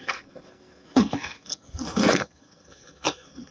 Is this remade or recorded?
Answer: remade